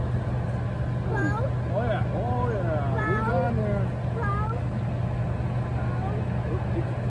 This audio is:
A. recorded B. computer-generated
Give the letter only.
A